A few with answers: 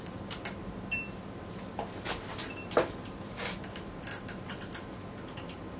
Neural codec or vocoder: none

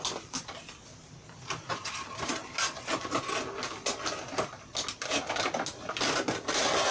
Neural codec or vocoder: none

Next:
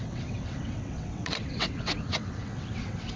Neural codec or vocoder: vocoder, WaveNeXt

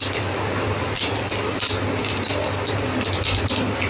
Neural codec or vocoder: none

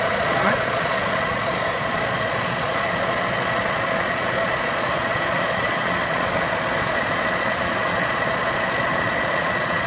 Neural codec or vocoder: vocoder, Vocos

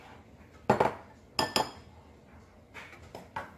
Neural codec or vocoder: none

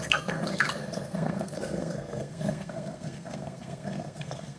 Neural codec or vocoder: codec, SNAC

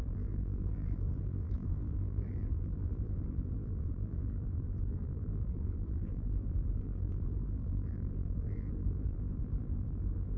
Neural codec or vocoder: vocoder, BigVGAN v2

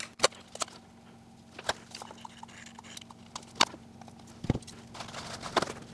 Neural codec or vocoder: none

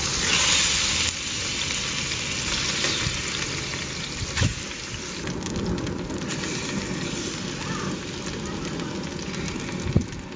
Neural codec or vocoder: none